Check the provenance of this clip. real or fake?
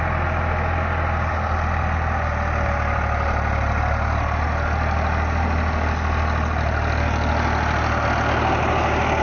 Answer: real